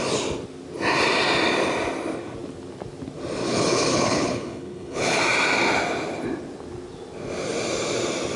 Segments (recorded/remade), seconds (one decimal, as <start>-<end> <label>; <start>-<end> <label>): 0.0-3.4 recorded; 3.4-5.2 remade; 5.2-8.4 recorded